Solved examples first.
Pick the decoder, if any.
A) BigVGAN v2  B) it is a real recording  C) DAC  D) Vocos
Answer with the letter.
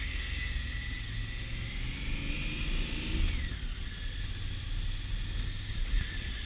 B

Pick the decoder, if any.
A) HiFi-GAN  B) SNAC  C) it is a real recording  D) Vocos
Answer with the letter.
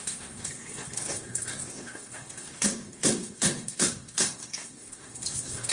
B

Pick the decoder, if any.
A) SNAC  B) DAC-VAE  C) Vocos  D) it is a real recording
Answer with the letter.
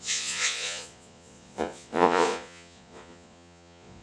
C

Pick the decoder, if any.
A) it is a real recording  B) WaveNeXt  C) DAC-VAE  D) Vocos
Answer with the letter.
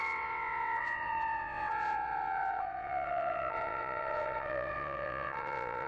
B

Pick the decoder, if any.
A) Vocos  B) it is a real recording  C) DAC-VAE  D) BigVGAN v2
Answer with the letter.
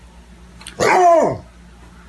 B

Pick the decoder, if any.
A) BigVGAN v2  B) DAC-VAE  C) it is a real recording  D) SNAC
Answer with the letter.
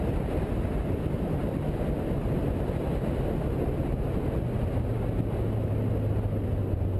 C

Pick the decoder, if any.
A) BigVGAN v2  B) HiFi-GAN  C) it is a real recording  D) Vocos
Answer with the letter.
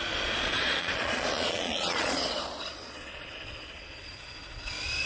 D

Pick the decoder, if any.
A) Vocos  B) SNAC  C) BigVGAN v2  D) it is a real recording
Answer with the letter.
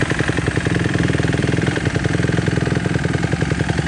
C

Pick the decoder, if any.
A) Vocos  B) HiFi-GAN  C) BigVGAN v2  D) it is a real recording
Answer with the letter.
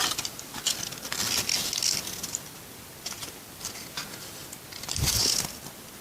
D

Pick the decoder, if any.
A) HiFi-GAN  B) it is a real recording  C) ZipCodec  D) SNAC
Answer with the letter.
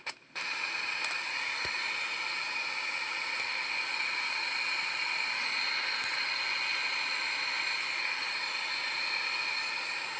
B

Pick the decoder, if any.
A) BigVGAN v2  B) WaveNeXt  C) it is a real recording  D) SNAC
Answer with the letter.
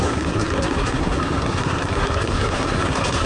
D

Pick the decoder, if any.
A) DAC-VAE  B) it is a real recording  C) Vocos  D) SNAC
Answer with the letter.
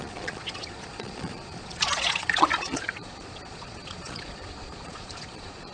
C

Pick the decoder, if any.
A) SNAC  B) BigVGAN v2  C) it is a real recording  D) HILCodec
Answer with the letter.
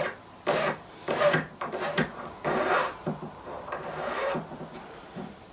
B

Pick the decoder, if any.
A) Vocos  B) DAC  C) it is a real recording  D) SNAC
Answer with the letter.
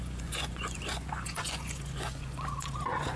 A